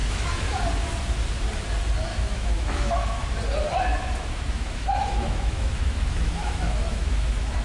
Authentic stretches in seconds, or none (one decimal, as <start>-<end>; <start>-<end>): 0.6-2.1; 3.3-3.9